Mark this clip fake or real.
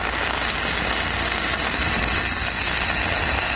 real